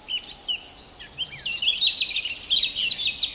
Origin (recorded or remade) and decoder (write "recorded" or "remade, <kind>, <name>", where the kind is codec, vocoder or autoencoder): recorded